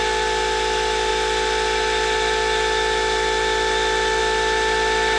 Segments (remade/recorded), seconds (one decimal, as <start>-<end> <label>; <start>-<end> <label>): 0.0-5.2 recorded